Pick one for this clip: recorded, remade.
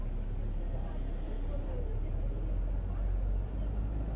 recorded